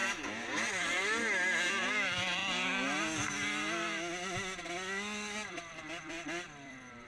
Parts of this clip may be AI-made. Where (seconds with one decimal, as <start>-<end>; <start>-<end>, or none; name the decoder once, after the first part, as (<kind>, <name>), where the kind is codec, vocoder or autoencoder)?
1.7-2.4 (vocoder, BigVGAN v2); 5.5-7.1